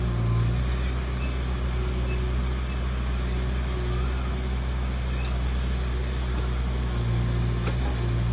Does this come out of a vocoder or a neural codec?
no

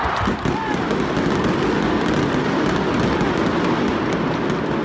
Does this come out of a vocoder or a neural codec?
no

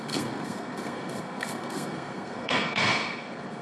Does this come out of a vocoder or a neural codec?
yes